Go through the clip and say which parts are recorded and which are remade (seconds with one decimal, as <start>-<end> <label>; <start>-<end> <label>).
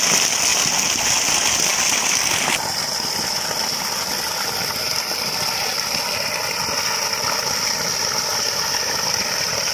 0.0-0.5 recorded; 0.5-1.1 remade; 1.1-8.3 recorded; 8.3-9.2 remade; 9.2-9.7 recorded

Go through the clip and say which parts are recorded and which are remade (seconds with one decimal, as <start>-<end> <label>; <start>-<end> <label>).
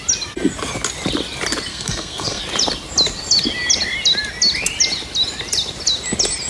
0.0-1.7 recorded; 1.7-2.4 remade; 2.4-6.5 recorded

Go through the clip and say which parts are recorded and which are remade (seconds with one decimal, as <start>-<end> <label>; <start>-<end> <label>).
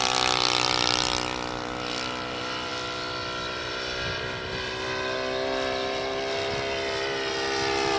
0.0-8.0 recorded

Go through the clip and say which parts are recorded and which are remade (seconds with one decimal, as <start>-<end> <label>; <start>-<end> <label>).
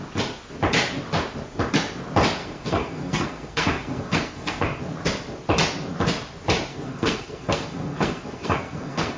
0.0-2.4 recorded; 2.4-4.8 remade; 4.8-6.7 recorded; 6.7-9.2 remade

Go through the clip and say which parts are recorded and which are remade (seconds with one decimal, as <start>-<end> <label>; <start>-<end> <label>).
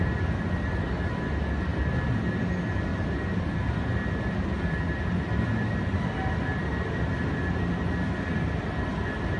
0.0-9.4 recorded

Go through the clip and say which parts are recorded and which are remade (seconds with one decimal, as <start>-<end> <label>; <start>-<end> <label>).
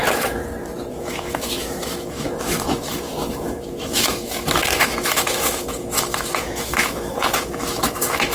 0.0-0.4 remade; 0.4-0.9 recorded; 0.9-8.3 remade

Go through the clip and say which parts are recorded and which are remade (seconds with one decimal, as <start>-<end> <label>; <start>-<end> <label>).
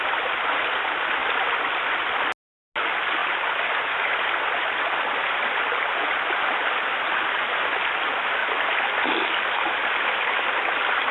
0.0-11.1 recorded